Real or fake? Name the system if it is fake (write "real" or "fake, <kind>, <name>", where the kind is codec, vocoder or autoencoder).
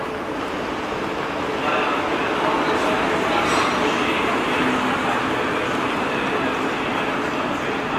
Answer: real